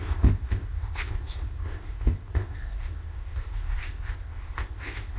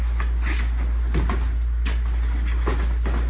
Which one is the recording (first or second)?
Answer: second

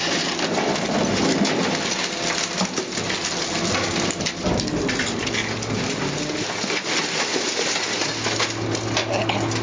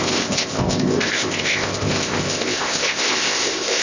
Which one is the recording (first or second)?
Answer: first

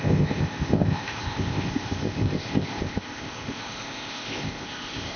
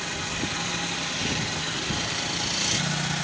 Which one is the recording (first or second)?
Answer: second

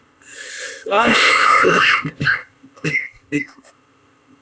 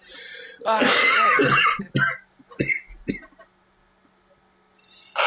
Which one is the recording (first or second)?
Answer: second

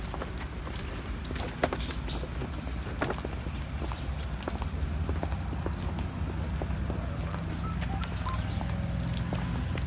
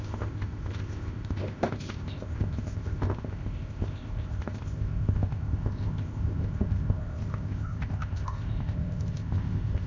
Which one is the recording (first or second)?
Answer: first